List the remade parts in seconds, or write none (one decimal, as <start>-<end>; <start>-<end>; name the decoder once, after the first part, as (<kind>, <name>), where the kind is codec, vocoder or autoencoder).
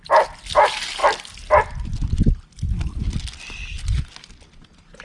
none